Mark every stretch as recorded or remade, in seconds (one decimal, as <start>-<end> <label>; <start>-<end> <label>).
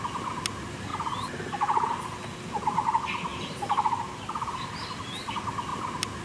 0.0-3.3 recorded; 3.3-4.8 remade; 4.8-6.2 recorded